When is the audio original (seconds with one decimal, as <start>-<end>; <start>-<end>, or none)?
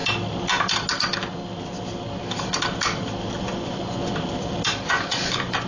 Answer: 0.0-3.4; 4.0-4.9